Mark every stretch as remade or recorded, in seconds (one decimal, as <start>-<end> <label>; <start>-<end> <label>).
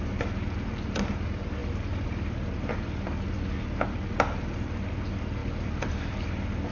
0.0-6.7 recorded